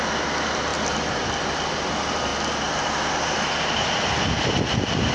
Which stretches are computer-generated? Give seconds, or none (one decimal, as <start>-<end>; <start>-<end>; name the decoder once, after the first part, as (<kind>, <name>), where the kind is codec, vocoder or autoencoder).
none